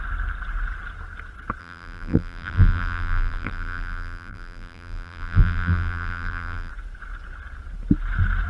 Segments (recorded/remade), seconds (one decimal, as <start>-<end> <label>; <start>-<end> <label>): 0.0-1.6 recorded; 1.6-6.7 remade; 6.7-8.5 recorded